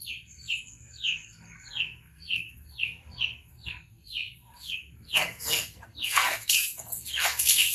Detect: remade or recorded remade